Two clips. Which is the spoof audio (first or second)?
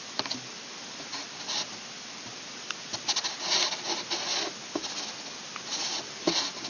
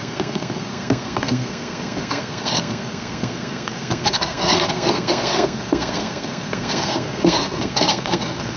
second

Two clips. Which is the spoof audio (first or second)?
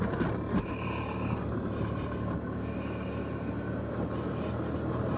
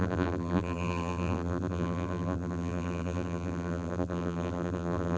second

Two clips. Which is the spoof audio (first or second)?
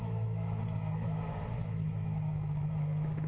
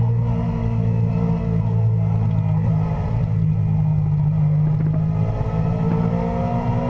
first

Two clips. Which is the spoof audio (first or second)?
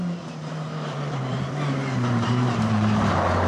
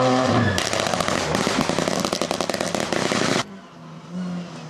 first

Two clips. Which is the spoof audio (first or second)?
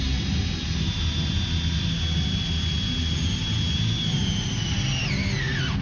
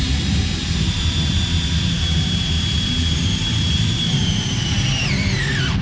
second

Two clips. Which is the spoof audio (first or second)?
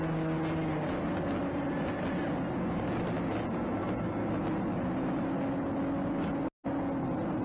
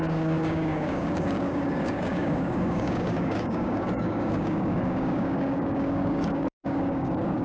second